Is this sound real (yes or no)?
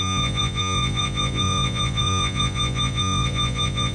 no